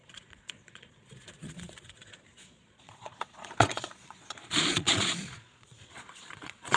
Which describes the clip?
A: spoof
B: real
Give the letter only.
A